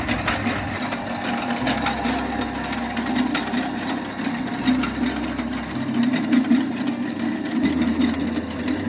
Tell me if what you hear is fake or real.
real